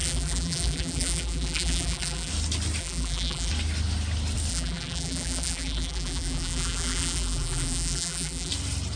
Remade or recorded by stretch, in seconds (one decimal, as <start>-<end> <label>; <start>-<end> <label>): 0.0-2.3 remade; 2.3-2.8 recorded; 2.8-3.5 remade; 3.5-4.5 recorded; 4.5-8.5 remade; 8.5-9.0 recorded